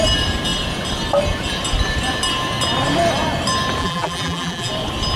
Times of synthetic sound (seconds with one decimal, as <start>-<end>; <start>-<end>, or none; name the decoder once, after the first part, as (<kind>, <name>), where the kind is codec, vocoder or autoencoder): 3.8-4.7 (vocoder, BigVGAN v2)